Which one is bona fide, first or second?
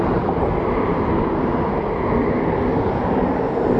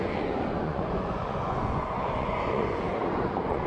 first